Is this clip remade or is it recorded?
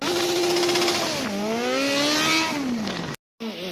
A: recorded